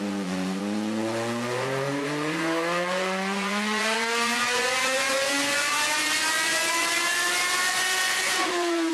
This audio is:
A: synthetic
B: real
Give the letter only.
A